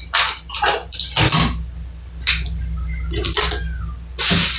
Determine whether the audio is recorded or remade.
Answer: recorded